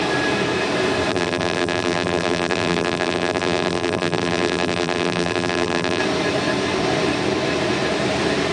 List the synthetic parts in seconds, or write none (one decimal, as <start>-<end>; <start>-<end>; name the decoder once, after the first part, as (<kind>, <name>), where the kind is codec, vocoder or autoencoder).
1.1-6.0 (vocoder, BigVGAN v2)